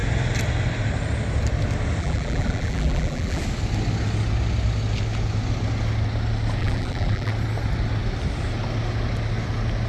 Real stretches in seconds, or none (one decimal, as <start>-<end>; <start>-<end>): 0.0-2.0; 3.4-6.6; 7.3-9.9